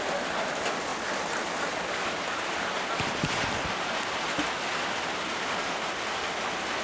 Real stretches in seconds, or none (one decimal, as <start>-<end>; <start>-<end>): 0.0-6.8